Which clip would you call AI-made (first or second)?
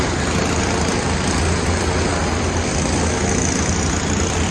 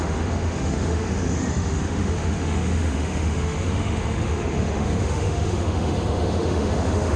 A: second